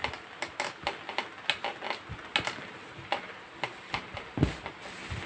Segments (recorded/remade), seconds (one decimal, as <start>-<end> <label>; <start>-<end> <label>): 0.0-5.3 recorded

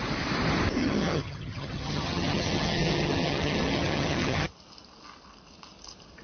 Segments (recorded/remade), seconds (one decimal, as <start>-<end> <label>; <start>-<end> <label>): 0.0-0.8 recorded; 0.8-4.5 remade; 4.5-6.2 recorded

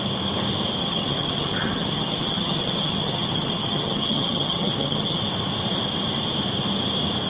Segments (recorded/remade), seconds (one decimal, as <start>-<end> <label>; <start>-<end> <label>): 0.0-0.8 recorded; 0.8-5.2 remade; 5.2-7.3 recorded

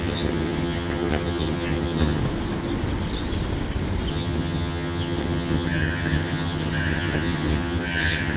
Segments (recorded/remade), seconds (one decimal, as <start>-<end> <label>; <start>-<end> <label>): 0.0-2.2 remade; 2.2-4.1 recorded; 4.1-8.4 remade

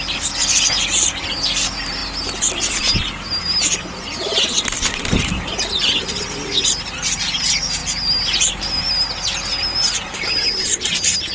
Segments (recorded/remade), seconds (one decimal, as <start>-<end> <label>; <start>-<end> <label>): 0.0-11.3 recorded

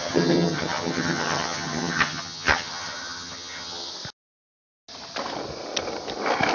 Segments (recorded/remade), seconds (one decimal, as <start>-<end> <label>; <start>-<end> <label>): 0.0-3.9 remade; 3.9-6.5 recorded

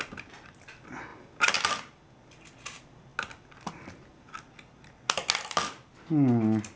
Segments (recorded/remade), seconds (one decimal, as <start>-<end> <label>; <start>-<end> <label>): 0.0-6.8 recorded